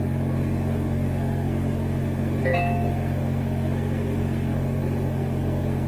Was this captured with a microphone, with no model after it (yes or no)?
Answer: no